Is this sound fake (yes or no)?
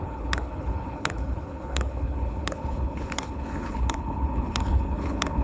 yes